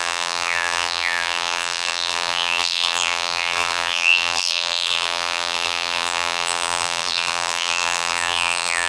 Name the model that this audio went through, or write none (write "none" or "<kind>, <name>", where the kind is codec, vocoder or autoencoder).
vocoder, BigVGAN v2